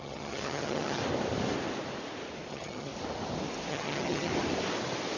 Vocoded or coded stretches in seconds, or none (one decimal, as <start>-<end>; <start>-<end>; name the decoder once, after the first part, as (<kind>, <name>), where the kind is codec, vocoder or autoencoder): 0.0-1.0 (vocoder, HiFi-GAN); 2.5-2.9; 3.7-4.3